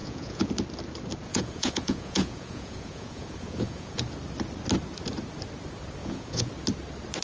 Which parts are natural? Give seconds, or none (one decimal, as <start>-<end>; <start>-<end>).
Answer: 0.5-1.3; 4.0-6.0; 6.5-7.2

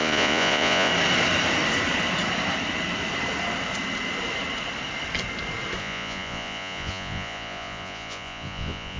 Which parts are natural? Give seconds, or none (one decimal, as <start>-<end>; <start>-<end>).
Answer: 0.9-5.8

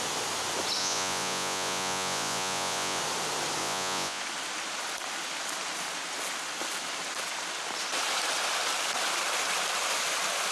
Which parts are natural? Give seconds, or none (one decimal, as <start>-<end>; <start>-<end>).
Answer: 0.0-0.8; 3.0-3.6; 4.2-10.5